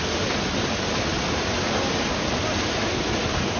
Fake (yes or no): yes